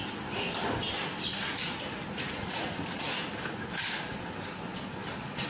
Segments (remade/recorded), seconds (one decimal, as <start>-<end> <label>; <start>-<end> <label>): 0.0-1.6 recorded; 1.6-3.2 remade; 3.2-5.5 recorded